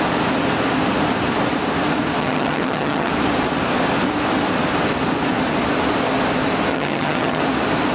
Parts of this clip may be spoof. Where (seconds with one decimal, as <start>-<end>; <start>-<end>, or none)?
2.2-3.1; 6.7-7.4